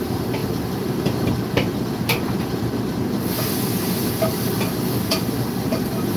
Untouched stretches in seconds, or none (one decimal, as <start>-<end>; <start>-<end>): 0.0-0.4; 1.3-6.2

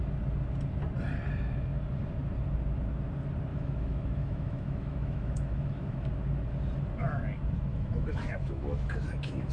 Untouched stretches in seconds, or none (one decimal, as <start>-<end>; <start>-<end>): 0.0-3.5; 6.1-7.7

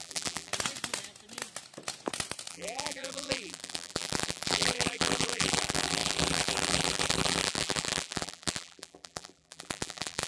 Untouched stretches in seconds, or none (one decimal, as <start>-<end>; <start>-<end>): 0.5-2.5

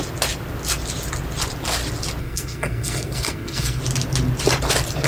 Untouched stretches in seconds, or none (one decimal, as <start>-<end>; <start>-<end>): 0.0-2.2; 3.8-5.1

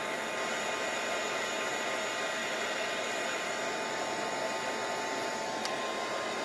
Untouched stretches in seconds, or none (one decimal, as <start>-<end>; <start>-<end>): 0.0-6.4